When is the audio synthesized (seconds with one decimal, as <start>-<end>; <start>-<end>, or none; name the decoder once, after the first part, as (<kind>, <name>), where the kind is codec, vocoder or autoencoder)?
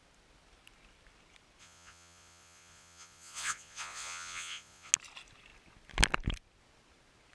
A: 1.6-4.9 (vocoder, Vocos)